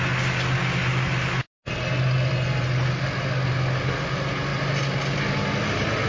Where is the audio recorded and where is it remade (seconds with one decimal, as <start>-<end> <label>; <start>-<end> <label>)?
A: 0.0-6.1 recorded